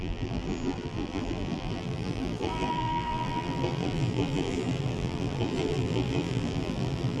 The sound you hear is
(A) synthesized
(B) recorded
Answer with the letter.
A